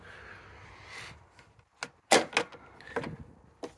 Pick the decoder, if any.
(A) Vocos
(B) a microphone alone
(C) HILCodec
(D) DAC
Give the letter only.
B